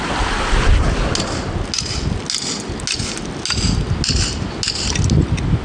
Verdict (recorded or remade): recorded